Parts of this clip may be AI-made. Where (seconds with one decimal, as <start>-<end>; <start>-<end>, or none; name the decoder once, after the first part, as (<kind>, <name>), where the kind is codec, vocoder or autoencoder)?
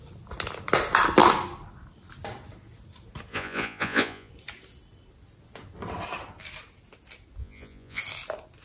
3.3-4.3 (vocoder, Vocos); 7.4-8.0